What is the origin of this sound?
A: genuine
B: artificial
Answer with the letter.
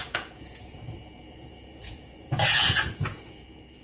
B